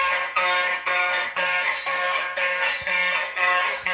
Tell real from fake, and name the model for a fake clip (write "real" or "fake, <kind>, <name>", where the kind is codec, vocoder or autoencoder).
fake, codec, SNAC